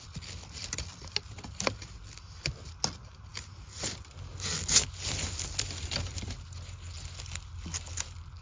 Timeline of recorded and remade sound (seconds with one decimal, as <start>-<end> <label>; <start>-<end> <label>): 0.0-8.4 recorded